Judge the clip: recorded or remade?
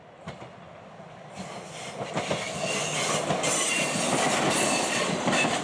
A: recorded